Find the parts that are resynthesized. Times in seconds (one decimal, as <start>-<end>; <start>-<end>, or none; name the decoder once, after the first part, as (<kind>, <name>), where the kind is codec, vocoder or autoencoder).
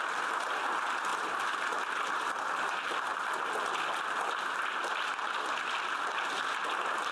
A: 1.1-1.8 (vocoder, BigVGAN v2)